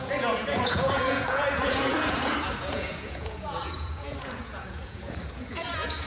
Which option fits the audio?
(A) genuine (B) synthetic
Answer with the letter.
B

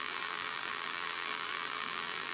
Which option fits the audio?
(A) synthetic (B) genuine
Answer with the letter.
A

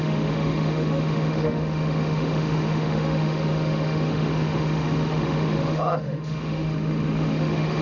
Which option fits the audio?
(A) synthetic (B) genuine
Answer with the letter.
A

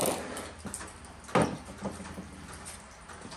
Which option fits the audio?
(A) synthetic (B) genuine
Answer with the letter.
B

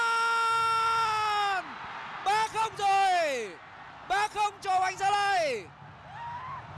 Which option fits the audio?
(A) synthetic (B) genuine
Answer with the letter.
B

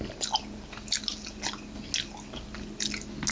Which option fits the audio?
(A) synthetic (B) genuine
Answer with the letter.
B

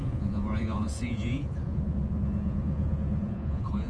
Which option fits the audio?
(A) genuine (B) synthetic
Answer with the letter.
B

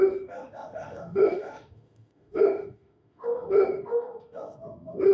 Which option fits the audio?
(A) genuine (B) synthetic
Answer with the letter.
B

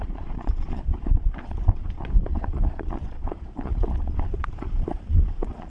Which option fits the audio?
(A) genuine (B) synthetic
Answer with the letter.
B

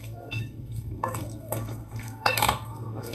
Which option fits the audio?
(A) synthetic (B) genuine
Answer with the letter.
A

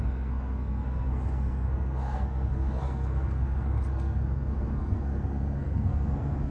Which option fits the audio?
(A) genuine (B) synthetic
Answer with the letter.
B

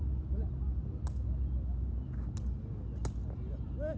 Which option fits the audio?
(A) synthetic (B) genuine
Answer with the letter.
B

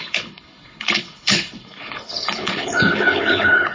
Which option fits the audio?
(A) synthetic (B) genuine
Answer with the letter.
A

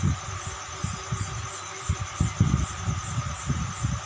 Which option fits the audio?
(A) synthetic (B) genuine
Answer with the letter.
B